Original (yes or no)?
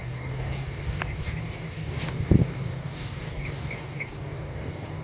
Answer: no